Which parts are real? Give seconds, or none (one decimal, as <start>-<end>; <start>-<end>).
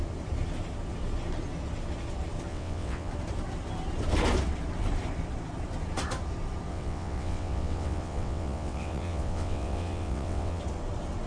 0.0-2.5; 3.1-6.7; 10.6-11.3